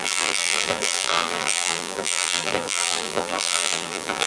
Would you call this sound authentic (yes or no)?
no